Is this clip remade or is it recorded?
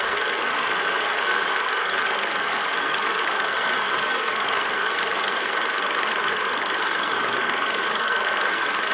remade